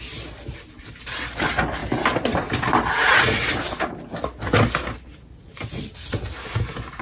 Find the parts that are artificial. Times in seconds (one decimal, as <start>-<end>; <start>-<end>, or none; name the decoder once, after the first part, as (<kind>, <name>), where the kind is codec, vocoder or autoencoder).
none